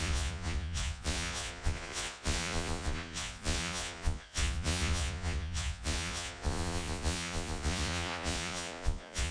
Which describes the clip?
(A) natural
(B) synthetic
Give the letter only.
B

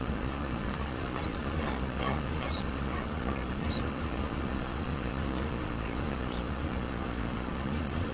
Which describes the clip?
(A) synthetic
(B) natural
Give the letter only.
A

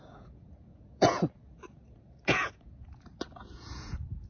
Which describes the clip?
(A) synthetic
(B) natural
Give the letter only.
A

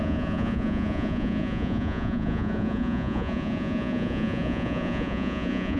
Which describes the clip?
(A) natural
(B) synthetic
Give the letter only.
B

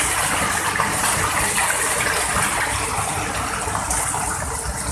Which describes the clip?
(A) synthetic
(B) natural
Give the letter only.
B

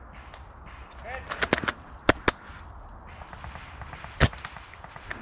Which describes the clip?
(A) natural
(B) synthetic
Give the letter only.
A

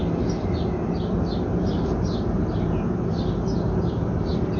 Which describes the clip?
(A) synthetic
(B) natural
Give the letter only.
B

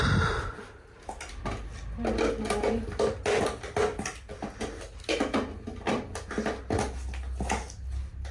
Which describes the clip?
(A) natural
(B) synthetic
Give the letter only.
A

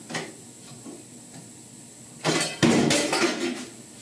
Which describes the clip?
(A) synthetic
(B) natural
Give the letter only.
B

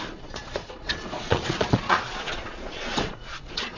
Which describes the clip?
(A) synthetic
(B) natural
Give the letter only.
A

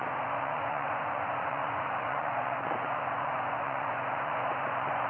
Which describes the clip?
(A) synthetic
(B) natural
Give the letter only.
A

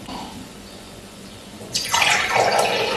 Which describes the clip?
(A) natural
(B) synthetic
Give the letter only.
B